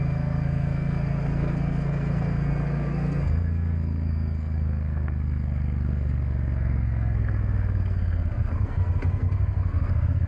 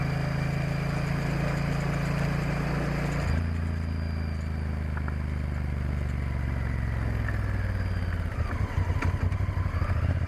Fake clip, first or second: first